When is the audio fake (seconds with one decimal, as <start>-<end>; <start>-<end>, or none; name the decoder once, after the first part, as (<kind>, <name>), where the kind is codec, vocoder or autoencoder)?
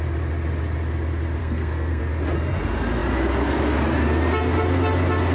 1.4-2.0 (codec, SNAC)